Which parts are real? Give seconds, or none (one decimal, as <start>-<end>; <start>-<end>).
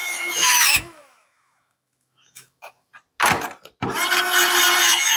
2.9-4.8